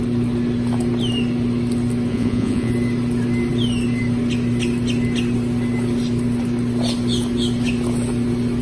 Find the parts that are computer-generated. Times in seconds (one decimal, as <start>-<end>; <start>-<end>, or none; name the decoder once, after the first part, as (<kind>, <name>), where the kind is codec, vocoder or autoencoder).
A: 2.1-2.7 (vocoder, Vocos)